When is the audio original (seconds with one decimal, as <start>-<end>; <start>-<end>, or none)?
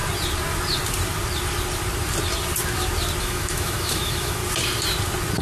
0.0-3.2; 4.4-5.4